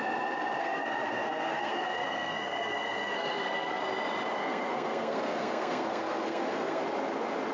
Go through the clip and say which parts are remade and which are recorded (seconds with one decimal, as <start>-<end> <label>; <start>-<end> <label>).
0.0-0.6 recorded; 0.6-3.8 remade; 3.8-4.4 recorded; 4.4-6.8 remade; 6.8-7.5 recorded